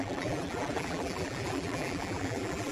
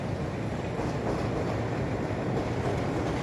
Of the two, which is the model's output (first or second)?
first